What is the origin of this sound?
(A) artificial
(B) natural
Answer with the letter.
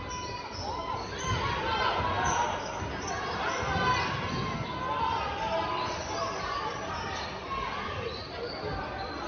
B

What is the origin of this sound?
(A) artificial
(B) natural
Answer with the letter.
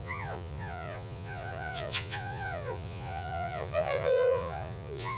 A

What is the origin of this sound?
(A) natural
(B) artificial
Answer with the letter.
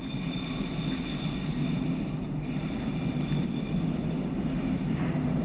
A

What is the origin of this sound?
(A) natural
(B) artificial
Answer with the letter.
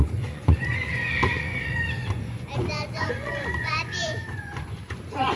B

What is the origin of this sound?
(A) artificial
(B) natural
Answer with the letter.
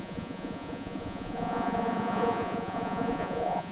A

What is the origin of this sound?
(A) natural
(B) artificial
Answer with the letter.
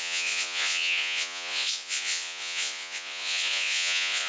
B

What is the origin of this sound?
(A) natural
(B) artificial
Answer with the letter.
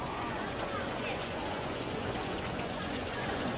B